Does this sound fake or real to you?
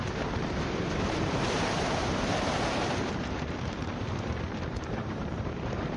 fake